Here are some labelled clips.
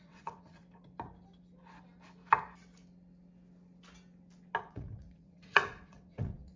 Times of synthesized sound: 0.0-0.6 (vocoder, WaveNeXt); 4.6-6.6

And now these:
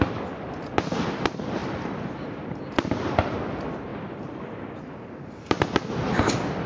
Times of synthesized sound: 1.6-3.4 (vocoder, BigVGAN v2); 3.9-5.7

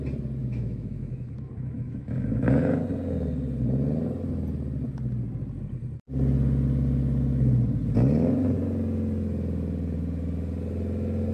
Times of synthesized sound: 0.4-2.8 (autoencoder, DAC-VAE)

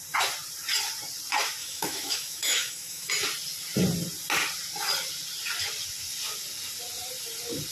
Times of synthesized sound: 1.6-3.1 (autoencoder, DAC-VAE)

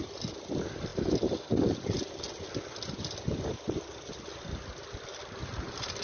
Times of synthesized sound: none

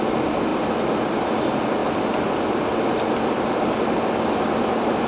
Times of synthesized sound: none

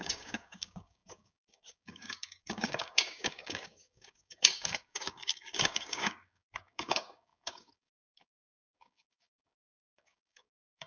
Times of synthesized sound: 0.0-10.9 (codec, DAC)

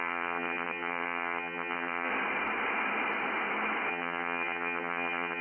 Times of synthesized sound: 0.0-2.1 (vocoder, HiFi-GAN); 3.9-5.4